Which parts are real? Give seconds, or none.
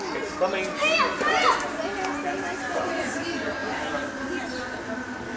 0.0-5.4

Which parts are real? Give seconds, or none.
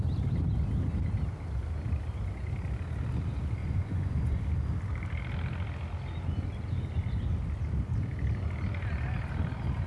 0.0-3.6; 4.4-9.9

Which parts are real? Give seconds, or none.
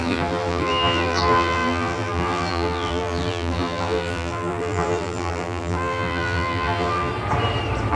7.1-7.9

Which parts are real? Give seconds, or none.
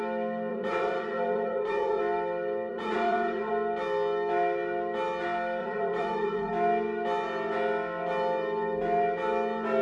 0.0-0.5; 2.0-2.7; 3.5-5.6; 6.5-9.8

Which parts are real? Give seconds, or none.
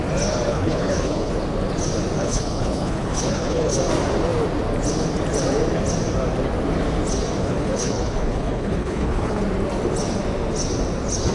0.0-0.5; 1.3-2.2; 3.8-7.4; 9.4-11.3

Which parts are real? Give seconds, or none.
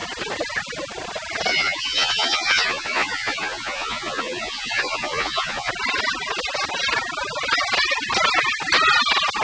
0.0-1.5; 5.7-9.4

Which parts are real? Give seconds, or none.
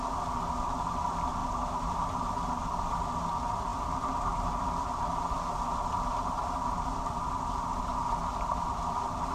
0.0-9.3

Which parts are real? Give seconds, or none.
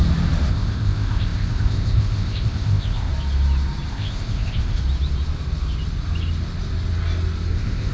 0.0-0.5; 3.1-3.9; 4.8-7.5